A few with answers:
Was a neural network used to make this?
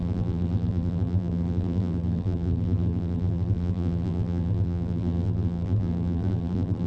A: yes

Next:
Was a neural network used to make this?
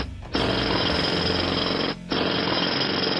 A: no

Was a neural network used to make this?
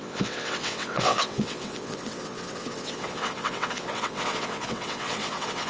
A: yes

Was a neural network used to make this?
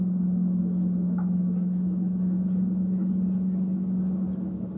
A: no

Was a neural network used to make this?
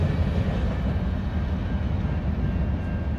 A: no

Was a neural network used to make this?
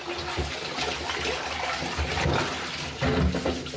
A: no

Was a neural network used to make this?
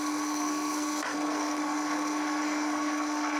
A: yes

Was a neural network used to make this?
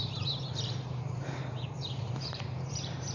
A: yes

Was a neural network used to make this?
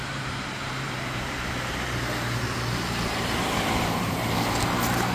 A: yes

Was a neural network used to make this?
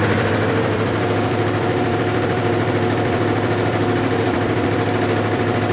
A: yes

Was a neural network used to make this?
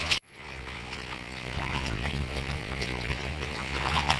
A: yes